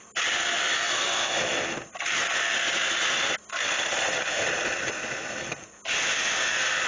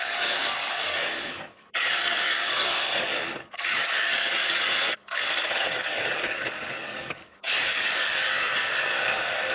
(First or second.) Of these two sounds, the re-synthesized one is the second